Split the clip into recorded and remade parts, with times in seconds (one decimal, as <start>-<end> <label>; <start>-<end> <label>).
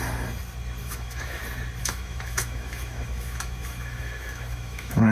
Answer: 0.0-0.8 recorded; 0.8-1.4 remade; 1.4-1.8 recorded; 1.8-5.1 remade